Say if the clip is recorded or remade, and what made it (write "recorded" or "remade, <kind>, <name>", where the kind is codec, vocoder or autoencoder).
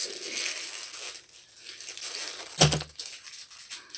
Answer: recorded